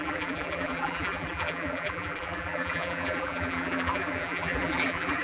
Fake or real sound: fake